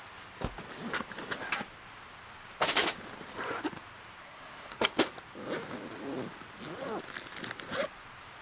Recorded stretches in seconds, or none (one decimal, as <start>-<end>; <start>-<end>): 0.0-4.2; 4.9-8.4